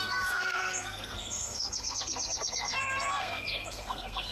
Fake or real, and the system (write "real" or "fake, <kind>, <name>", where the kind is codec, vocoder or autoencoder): fake, codec, SNAC